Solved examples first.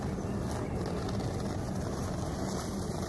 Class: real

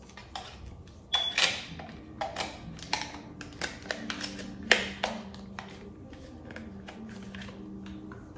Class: real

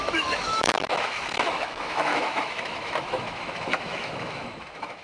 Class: fake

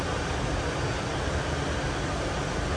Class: real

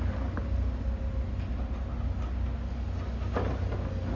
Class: real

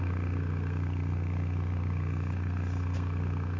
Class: fake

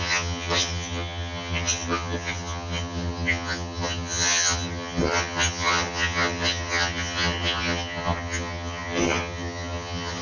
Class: fake